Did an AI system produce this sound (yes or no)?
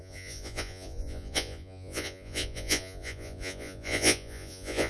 yes